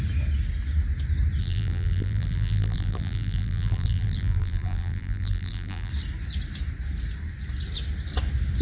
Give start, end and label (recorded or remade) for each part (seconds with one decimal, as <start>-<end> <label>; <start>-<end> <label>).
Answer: 0.0-1.4 recorded; 1.4-5.9 remade; 5.9-8.6 recorded